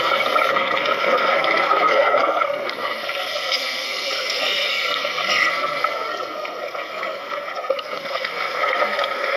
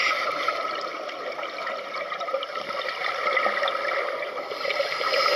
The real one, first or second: second